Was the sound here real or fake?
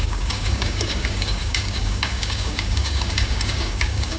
fake